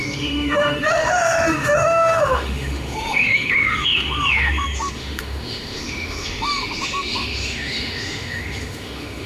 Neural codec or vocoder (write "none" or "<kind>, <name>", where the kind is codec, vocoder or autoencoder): autoencoder, DAC-VAE